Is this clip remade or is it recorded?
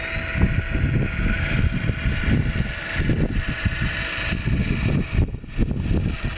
recorded